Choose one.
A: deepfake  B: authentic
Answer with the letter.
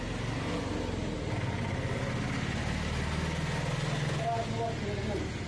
B